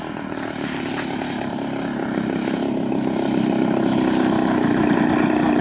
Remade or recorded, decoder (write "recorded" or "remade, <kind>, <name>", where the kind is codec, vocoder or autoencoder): recorded